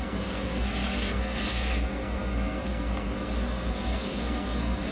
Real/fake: fake